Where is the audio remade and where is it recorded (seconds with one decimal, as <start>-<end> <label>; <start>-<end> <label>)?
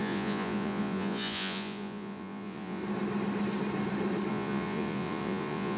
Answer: 0.0-2.8 remade; 2.8-4.3 recorded; 4.3-5.8 remade